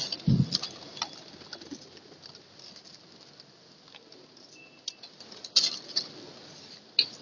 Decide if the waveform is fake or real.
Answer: real